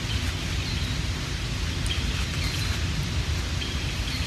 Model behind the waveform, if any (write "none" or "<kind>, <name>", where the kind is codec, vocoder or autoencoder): none